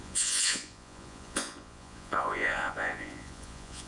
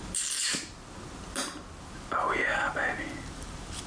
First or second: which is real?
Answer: second